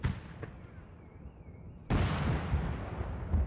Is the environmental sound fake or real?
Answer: real